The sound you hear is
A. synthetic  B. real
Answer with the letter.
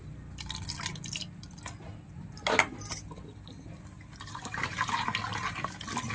B